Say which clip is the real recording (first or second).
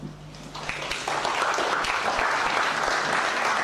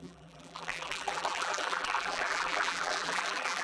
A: first